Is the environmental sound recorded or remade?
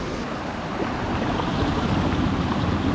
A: recorded